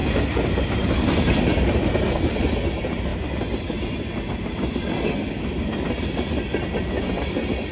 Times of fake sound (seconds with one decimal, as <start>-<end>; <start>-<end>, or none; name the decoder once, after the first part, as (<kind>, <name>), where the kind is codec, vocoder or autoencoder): none